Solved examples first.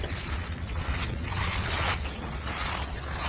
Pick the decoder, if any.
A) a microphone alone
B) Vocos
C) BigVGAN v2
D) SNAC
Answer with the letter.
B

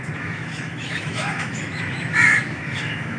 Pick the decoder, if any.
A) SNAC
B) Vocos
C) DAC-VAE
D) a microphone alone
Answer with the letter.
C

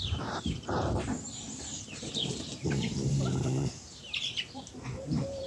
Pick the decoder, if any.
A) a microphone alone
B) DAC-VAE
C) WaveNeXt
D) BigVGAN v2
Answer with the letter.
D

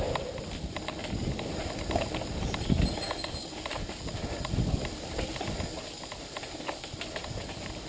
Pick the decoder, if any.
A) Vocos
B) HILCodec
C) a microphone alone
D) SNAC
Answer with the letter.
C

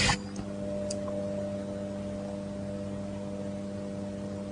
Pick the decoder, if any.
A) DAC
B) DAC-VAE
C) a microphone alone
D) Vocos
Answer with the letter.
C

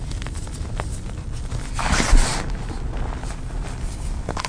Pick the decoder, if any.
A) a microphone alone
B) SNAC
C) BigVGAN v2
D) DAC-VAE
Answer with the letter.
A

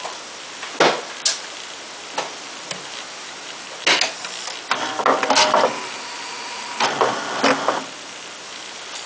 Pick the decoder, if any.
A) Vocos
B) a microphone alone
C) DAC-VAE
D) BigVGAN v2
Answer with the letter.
B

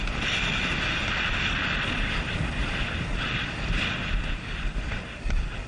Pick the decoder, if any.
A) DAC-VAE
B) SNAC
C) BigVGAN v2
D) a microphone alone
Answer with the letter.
C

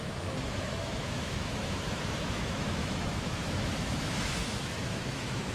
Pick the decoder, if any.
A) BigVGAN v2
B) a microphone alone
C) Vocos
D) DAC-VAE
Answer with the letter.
D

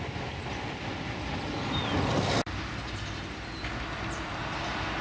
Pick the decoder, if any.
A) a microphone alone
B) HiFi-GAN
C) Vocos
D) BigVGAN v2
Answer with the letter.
A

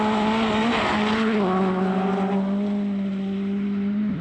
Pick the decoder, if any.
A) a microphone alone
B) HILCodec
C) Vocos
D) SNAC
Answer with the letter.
A